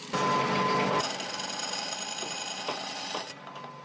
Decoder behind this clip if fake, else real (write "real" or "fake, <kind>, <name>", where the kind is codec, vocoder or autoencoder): real